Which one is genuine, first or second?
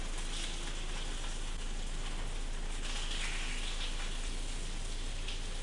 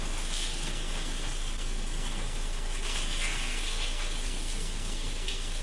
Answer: first